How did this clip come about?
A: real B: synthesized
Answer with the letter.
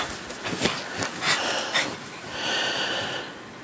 A